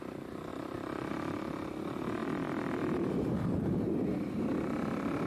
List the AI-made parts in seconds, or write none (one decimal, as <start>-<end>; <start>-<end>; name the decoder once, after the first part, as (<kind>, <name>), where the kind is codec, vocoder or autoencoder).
none